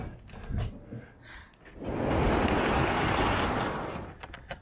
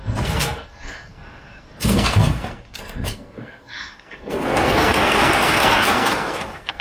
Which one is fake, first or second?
second